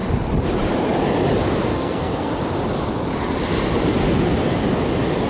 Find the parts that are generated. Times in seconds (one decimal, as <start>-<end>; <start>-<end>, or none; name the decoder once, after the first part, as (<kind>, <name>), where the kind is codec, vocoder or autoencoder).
1.7-2.3 (codec, SNAC)